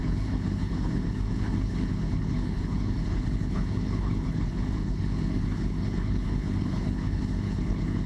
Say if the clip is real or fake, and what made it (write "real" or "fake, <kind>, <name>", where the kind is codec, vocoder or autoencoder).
fake, codec, HILCodec